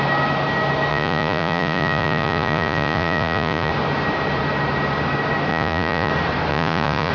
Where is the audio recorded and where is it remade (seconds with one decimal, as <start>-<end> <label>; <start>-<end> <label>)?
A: 0.0-0.9 recorded; 0.9-3.7 remade; 3.7-5.5 recorded; 5.5-6.1 remade; 6.1-6.5 recorded; 6.5-7.1 remade